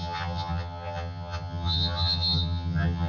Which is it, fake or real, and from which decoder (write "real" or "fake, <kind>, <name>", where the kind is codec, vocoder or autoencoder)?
fake, vocoder, HiFi-GAN